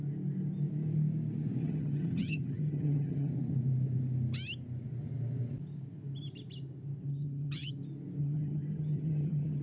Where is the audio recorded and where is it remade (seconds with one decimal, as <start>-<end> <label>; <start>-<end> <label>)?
0.0-1.6 recorded; 1.6-3.3 remade; 3.3-7.1 recorded; 7.1-7.7 remade; 7.7-8.2 recorded; 8.2-9.6 remade